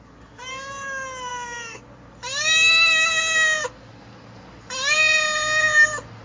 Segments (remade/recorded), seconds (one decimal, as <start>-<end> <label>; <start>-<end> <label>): 0.0-6.2 recorded